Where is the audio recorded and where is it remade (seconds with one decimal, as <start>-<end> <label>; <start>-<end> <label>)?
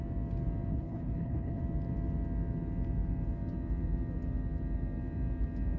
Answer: 0.0-0.7 recorded; 0.7-1.6 remade; 1.6-5.8 recorded